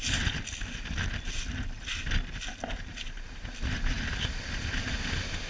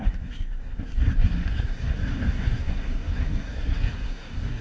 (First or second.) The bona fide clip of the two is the first